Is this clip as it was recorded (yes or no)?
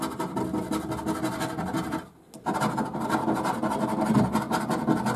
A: yes